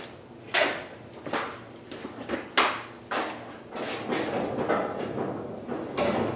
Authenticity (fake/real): real